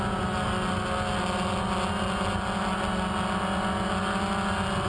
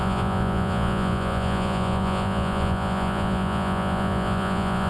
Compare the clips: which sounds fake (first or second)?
second